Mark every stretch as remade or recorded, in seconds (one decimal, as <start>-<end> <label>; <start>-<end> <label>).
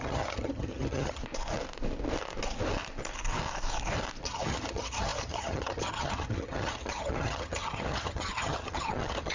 0.0-1.2 remade; 1.2-4.2 recorded; 4.2-9.3 remade